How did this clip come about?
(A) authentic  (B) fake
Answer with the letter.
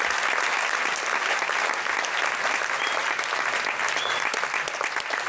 A